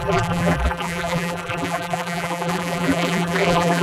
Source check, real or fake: fake